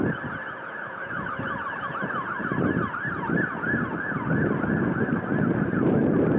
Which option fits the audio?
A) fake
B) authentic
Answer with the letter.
B